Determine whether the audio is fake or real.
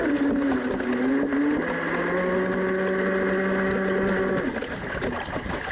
real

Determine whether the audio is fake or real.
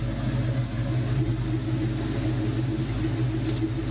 real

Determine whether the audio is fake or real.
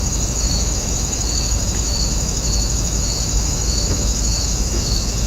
fake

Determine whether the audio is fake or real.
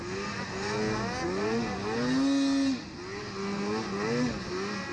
real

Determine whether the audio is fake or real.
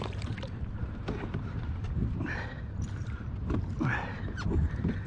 fake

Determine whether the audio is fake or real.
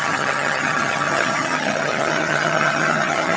fake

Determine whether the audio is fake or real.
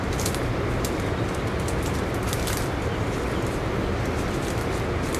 real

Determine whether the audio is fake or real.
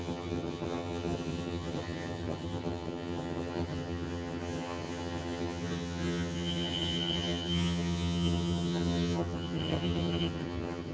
fake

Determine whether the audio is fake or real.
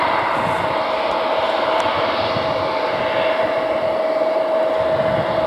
real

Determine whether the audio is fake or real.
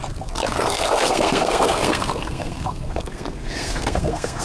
fake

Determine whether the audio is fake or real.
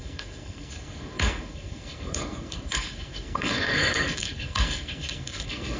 fake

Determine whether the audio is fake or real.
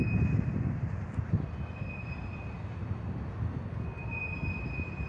real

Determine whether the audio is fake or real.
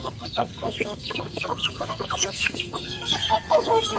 fake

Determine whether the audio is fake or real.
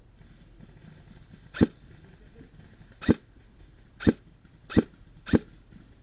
real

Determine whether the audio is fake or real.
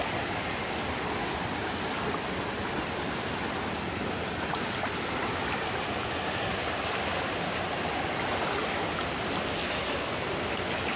real